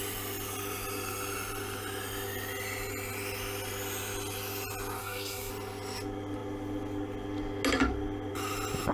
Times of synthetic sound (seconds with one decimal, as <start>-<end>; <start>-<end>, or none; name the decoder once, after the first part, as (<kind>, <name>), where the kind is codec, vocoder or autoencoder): 5.0-5.5 (codec, SNAC)